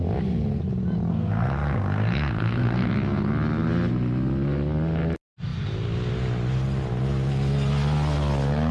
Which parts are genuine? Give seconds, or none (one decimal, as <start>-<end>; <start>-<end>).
0.0-1.1; 2.9-8.7